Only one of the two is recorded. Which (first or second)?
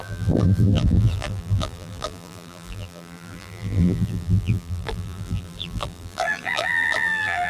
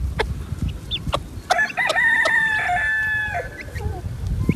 second